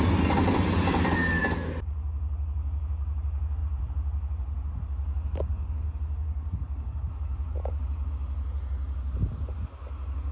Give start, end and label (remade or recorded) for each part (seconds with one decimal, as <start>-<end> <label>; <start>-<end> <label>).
0.0-10.3 recorded